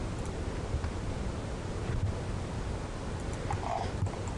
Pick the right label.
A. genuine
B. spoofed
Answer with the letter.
A